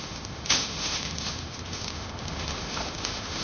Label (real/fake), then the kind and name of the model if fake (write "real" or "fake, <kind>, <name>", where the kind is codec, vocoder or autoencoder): fake, autoencoder, DAC-VAE